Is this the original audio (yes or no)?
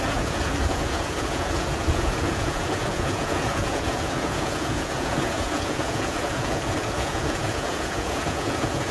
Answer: no